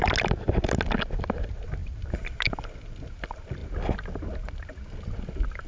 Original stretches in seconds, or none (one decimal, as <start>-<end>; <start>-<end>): 0.0-1.8; 2.3-5.7

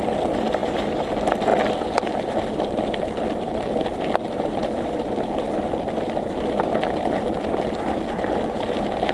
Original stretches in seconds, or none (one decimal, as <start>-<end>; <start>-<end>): 0.0-9.1

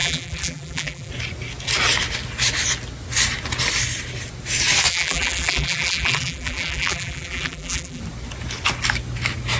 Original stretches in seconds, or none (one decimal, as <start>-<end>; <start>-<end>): 1.1-4.9; 8.0-9.6

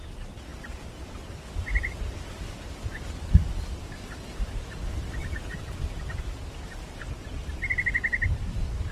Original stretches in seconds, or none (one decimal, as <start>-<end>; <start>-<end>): 0.0-5.2; 6.9-8.9

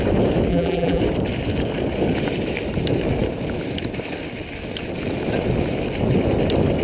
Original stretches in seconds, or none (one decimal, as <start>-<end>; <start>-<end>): 0.0-0.5; 1.0-6.8

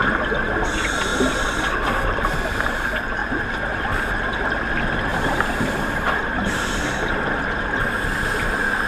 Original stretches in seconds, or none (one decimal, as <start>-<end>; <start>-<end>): 0.0-5.1; 7.8-8.9

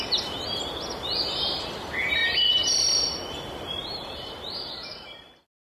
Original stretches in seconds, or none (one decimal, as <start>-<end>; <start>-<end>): 2.2-3.3